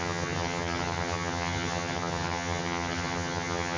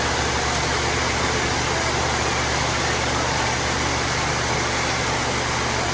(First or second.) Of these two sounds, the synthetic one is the first